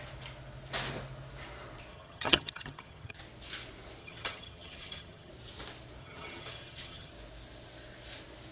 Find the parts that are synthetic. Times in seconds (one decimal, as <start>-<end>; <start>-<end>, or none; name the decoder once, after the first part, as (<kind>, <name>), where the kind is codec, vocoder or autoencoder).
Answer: 1.9-3.2 (vocoder, HiFi-GAN); 4.0-5.3; 6.0-7.1